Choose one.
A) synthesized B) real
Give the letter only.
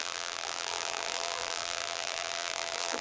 A